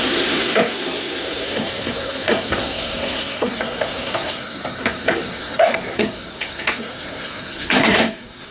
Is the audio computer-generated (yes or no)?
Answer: yes